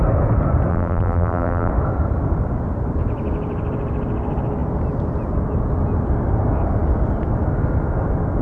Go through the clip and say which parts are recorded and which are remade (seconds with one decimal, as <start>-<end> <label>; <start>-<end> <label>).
0.0-0.7 recorded; 0.7-1.7 remade; 1.7-8.4 recorded